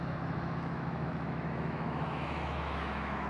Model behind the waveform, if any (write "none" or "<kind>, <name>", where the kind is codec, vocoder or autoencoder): autoencoder, DAC-VAE